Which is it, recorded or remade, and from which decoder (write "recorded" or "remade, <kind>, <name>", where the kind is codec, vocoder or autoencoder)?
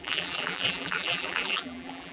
remade, vocoder, BigVGAN v2